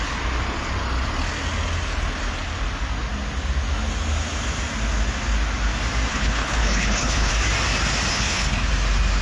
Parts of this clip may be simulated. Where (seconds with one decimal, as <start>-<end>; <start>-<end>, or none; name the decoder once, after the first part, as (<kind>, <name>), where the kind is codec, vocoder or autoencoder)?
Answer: 6.1-7.3 (codec, HILCodec); 8.1-8.7